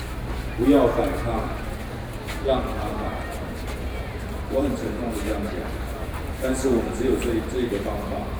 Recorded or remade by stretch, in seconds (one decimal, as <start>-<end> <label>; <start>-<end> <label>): 0.0-3.1 recorded; 3.1-5.0 remade; 5.0-6.0 recorded; 6.0-8.4 remade